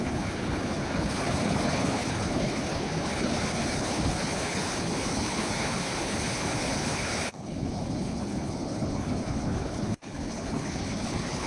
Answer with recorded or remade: remade